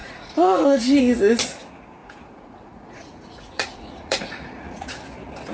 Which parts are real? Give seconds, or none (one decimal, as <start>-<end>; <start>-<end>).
1.0-2.0; 5.0-5.5